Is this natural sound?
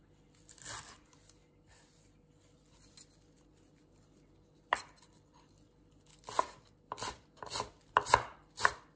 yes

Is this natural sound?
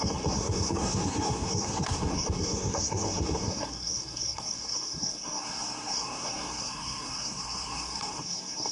no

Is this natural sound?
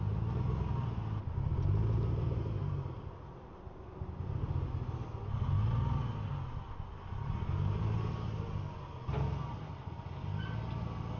yes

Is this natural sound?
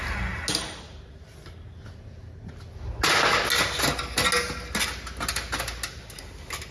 yes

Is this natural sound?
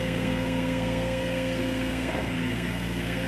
no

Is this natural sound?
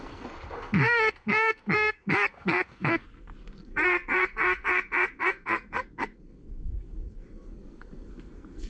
no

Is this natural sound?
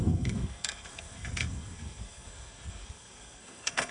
no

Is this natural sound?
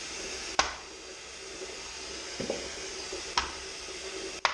yes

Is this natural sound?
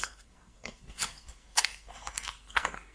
no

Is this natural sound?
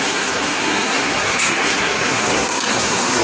no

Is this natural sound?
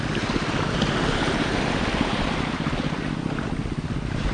yes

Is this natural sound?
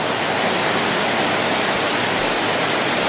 yes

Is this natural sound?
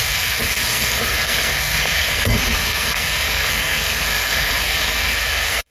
no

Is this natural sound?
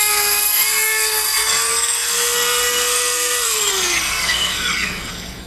no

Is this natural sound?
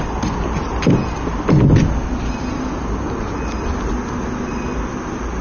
yes